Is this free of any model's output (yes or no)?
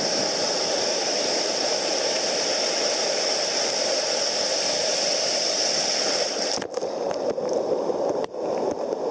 yes